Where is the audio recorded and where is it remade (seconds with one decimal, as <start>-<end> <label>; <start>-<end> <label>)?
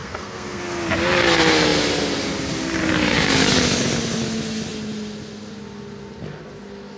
0.0-0.6 remade; 0.6-7.0 recorded